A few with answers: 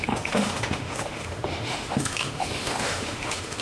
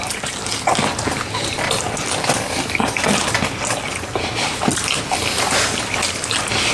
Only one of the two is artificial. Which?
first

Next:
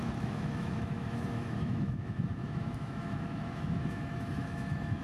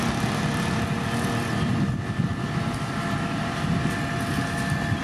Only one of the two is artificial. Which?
first